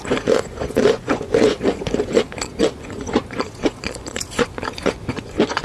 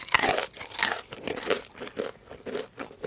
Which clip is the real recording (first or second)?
second